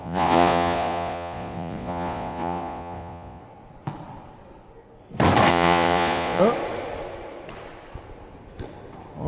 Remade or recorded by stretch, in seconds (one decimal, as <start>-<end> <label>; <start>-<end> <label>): 0.0-3.4 remade; 3.4-5.5 recorded; 5.5-6.4 remade; 6.4-9.3 recorded